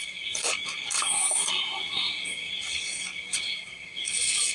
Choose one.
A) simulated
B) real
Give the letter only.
A